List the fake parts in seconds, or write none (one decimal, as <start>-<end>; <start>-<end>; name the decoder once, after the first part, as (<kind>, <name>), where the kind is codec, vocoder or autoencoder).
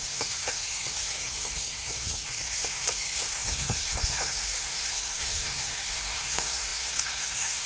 0.0-7.7 (codec, SNAC)